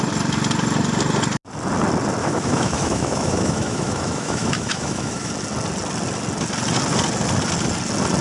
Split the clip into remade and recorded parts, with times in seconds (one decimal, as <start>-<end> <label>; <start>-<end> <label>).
0.0-2.2 recorded; 2.2-5.3 remade; 5.3-8.2 recorded

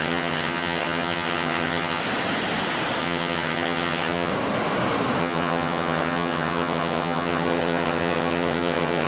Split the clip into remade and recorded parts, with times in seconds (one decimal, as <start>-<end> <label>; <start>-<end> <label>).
0.0-2.0 remade; 2.0-3.0 recorded; 3.0-4.3 remade; 4.3-5.2 recorded; 5.2-9.1 remade

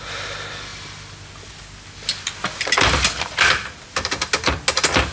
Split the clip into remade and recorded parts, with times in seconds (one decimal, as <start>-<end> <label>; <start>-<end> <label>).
0.0-5.1 recorded